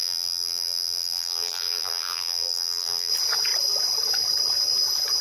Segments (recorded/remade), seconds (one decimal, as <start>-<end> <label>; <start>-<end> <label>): 0.0-3.1 remade; 3.1-5.2 recorded